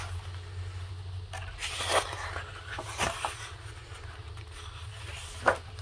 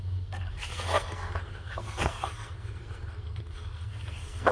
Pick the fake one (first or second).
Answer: second